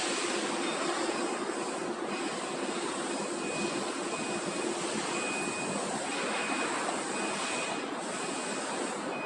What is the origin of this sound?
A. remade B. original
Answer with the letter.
B